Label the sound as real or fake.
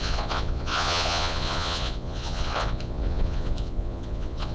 fake